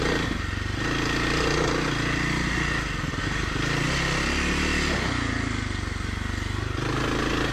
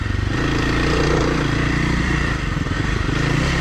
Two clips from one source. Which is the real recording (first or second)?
first